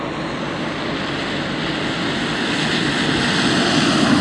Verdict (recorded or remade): recorded